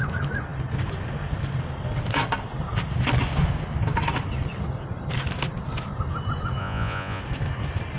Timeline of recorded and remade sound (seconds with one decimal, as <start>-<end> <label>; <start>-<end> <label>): 0.0-6.6 recorded; 6.6-7.2 remade; 7.2-8.0 recorded